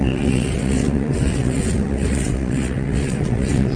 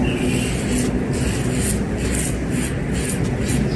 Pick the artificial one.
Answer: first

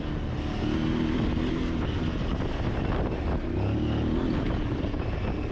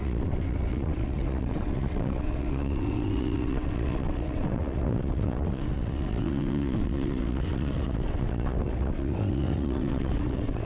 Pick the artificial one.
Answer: second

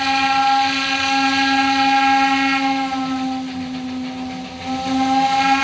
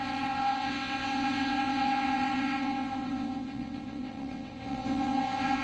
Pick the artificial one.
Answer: second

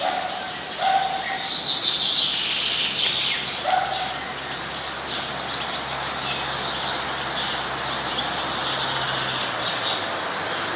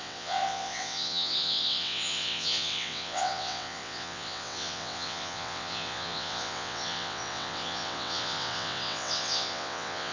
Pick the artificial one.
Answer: second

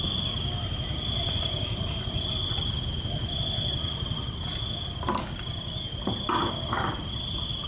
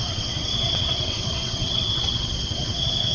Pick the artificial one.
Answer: second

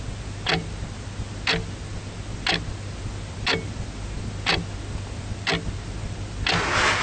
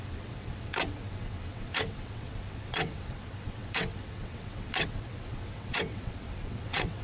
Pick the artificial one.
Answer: second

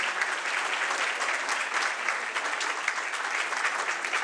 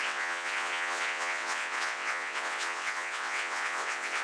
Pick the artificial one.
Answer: second